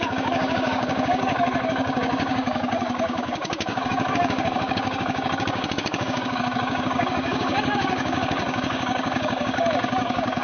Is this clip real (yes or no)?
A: no